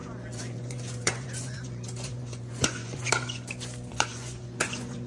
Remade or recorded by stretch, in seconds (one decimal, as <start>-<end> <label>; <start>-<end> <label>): 0.0-3.1 remade; 3.1-3.9 recorded; 3.9-5.1 remade